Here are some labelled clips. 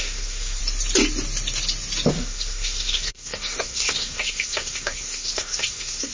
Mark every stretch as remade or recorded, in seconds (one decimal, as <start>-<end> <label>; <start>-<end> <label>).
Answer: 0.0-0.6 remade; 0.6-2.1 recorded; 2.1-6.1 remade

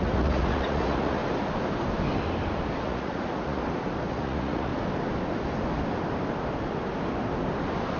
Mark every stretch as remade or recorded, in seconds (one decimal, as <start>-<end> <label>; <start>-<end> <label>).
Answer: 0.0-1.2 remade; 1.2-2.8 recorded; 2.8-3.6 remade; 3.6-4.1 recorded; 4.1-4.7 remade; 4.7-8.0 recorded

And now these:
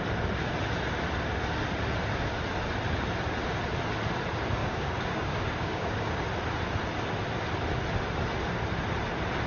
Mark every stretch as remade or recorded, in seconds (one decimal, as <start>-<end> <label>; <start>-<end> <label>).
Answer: 0.0-4.6 recorded; 4.6-6.2 remade; 6.2-9.5 recorded

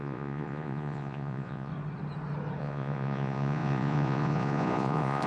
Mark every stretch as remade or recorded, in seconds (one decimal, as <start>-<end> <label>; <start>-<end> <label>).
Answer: 0.0-1.7 remade; 1.7-2.6 recorded; 2.6-5.3 remade